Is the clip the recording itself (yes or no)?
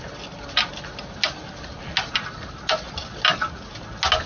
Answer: yes